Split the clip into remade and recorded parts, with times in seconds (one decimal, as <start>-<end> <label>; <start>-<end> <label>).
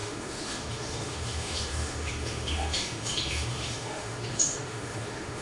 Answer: 0.0-5.4 remade